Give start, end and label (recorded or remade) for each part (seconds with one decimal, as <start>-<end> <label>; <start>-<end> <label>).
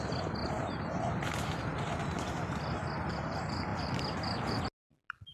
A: 0.0-0.4 recorded; 0.4-1.0 remade; 1.0-3.7 recorded; 3.7-4.6 remade; 4.6-5.3 recorded